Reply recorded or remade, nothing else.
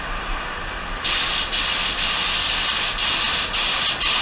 recorded